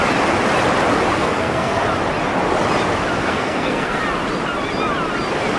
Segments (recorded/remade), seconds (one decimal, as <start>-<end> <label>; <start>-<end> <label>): 0.0-1.1 recorded; 1.1-1.8 remade; 1.8-3.2 recorded; 3.2-4.0 remade; 4.0-5.6 recorded